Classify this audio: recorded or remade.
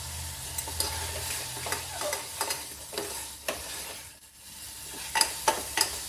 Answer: recorded